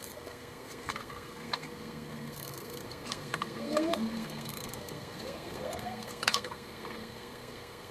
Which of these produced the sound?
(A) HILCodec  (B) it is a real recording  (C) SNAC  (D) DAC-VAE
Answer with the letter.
C